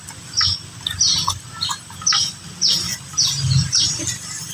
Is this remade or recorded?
recorded